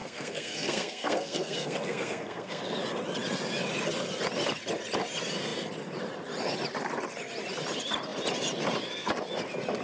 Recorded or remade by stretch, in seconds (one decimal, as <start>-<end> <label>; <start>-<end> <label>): 0.0-2.6 remade; 2.6-9.8 recorded